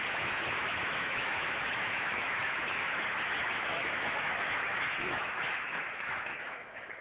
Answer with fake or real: fake